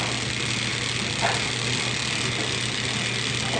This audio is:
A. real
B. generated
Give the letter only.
A